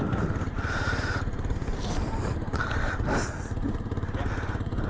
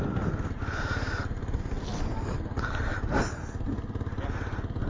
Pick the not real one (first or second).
first